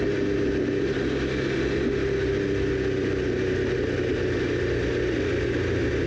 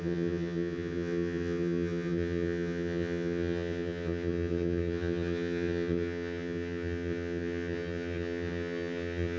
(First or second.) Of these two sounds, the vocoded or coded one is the second